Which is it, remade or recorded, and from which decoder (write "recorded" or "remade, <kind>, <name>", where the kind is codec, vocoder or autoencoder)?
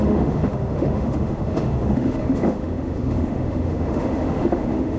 remade, autoencoder, DAC-VAE